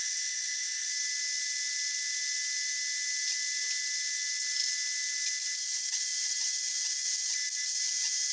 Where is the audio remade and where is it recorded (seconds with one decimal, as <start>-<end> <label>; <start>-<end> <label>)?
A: 0.0-0.9 remade; 0.9-8.3 recorded